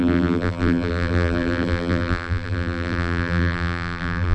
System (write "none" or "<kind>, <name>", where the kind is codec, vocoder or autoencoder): vocoder, BigVGAN v2